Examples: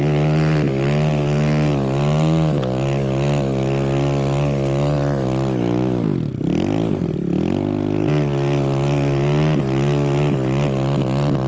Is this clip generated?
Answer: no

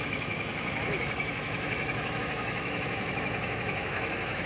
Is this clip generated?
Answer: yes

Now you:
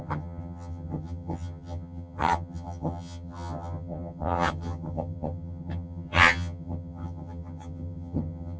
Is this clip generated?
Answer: yes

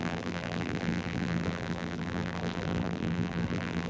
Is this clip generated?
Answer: yes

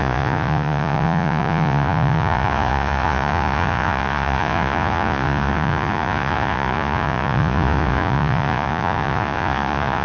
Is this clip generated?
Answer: yes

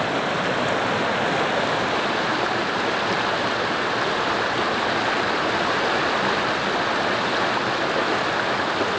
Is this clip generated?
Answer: no